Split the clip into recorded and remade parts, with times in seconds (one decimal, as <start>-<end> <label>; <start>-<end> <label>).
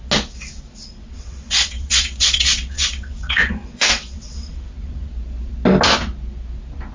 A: 0.0-1.0 recorded; 1.0-5.1 remade; 5.1-6.9 recorded